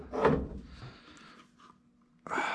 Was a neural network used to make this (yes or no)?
no